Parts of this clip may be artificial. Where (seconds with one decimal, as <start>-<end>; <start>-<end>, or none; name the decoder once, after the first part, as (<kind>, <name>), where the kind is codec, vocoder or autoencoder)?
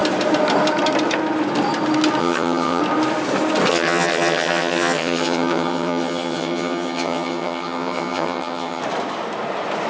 2.2-2.8 (vocoder, HiFi-GAN); 3.7-8.8